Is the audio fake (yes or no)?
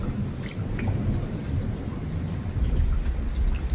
yes